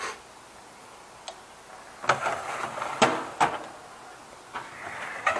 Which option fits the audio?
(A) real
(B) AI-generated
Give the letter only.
A